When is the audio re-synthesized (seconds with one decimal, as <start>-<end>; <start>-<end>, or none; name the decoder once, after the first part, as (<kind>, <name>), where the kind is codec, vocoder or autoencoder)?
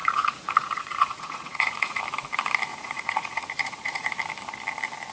0.0-2.0 (vocoder, Vocos); 2.7-4.1